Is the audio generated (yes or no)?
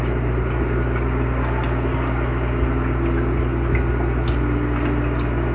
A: no